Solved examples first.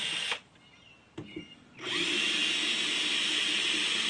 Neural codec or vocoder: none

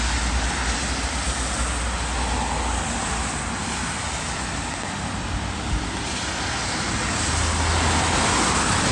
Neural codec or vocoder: none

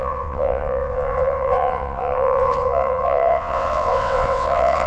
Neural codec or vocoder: vocoder, WaveNeXt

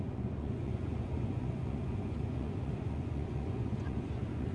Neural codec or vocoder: vocoder, Vocos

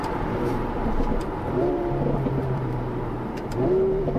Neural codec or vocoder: vocoder, BigVGAN v2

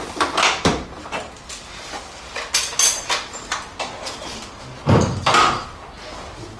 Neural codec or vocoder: none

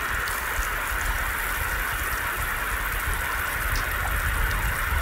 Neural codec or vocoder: none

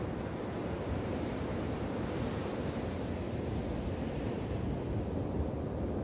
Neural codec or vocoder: none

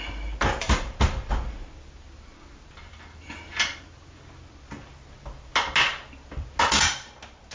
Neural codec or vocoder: none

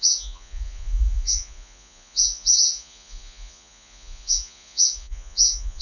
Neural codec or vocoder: vocoder, Vocos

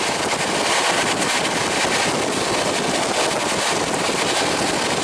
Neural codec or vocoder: none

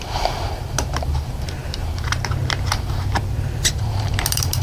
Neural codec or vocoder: vocoder, BigVGAN v2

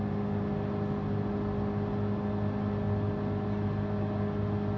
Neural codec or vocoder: none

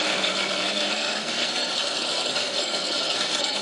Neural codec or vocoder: codec, SNAC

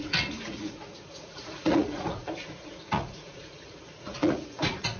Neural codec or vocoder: vocoder, Vocos